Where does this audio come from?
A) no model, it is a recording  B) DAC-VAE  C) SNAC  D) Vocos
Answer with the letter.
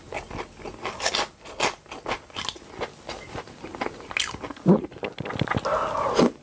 A